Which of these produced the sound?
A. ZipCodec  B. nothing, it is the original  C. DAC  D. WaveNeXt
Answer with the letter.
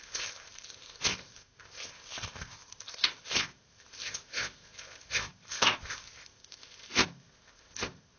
A